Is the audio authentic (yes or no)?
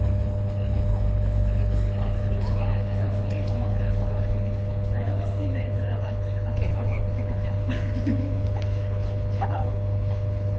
no